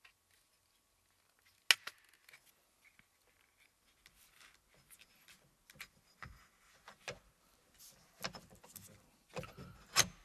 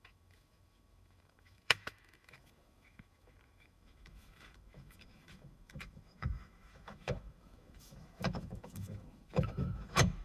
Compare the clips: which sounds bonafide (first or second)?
first